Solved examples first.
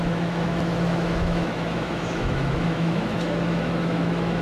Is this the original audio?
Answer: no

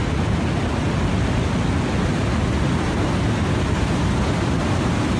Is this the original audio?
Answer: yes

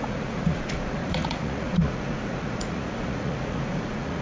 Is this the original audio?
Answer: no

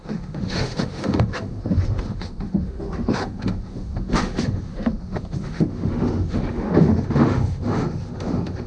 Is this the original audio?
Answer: no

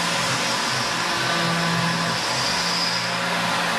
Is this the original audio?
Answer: yes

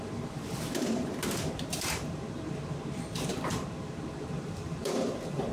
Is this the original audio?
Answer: no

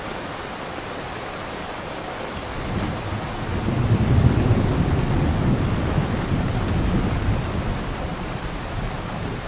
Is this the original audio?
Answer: yes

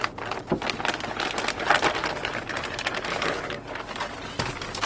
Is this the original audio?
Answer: yes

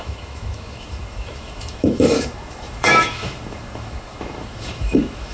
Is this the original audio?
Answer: no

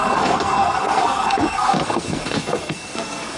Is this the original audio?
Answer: no